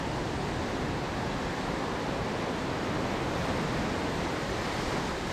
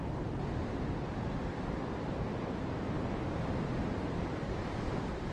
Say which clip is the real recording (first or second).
first